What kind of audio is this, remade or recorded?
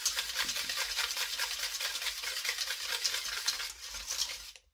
recorded